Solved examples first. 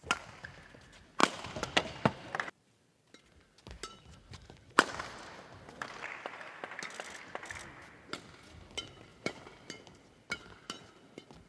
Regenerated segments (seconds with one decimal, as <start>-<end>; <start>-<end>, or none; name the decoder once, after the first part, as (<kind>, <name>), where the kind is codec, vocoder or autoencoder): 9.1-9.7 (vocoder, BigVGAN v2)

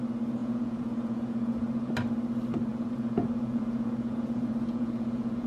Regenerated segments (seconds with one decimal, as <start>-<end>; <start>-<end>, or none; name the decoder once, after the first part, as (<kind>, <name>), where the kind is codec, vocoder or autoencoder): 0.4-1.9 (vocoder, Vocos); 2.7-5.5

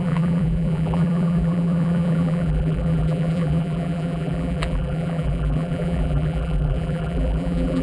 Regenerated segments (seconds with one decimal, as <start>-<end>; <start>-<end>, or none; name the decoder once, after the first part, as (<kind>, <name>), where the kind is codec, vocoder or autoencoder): 0.0-7.8 (vocoder, BigVGAN v2)